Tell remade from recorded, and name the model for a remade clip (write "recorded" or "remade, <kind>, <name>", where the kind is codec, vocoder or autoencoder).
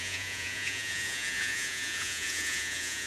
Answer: remade, vocoder, Vocos